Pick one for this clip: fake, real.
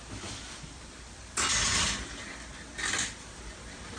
real